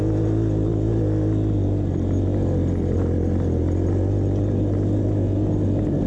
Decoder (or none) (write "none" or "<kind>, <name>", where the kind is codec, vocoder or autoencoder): none